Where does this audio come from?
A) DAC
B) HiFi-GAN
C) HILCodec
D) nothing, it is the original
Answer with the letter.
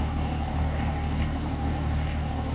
A